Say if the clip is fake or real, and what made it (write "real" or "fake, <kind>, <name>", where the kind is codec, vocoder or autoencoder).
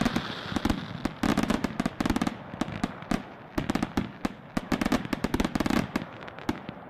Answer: real